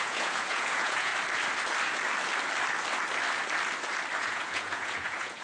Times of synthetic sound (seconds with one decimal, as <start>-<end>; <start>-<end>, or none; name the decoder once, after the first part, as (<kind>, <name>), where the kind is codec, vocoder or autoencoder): 0.0-1.1 (vocoder, Vocos); 4.2-5.4